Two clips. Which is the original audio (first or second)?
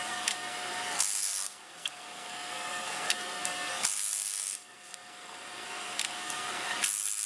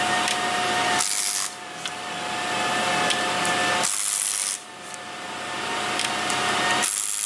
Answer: second